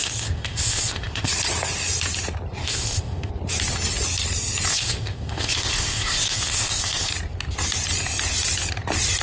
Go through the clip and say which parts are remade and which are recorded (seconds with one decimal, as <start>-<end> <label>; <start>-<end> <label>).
0.0-1.3 remade; 1.3-2.6 recorded; 2.6-3.3 remade; 3.3-4.7 recorded; 4.7-7.1 remade; 7.1-9.2 recorded